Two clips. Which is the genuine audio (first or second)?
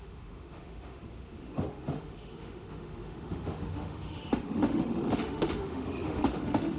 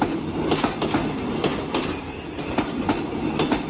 second